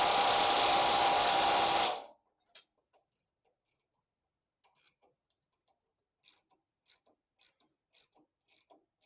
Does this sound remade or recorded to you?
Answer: recorded